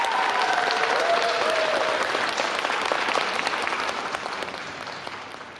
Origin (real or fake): real